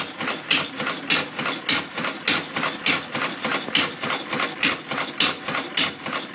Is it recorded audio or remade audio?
recorded